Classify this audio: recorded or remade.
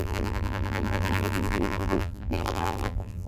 remade